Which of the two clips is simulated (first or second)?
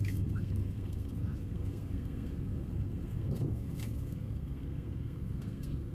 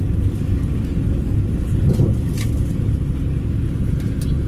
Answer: first